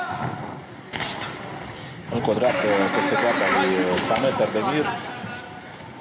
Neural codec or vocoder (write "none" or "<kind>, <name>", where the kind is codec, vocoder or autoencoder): none